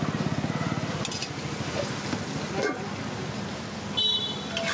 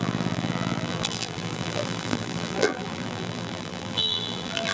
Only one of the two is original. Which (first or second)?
first